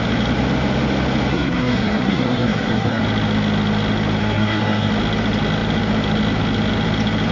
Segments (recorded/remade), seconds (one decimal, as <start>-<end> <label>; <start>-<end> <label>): 0.0-1.3 recorded; 1.3-3.0 remade; 3.0-4.2 recorded; 4.2-4.9 remade; 4.9-7.3 recorded